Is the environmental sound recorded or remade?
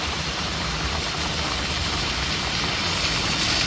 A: recorded